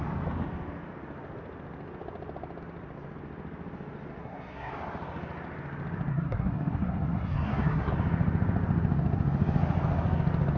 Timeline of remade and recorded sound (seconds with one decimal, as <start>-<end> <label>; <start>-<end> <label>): 0.0-4.2 recorded; 4.2-4.7 remade; 4.7-6.1 recorded; 6.1-7.9 remade; 7.9-10.6 recorded